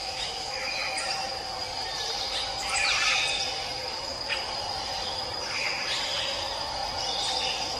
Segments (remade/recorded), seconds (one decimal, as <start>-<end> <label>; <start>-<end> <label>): 0.0-0.5 remade; 0.5-7.8 recorded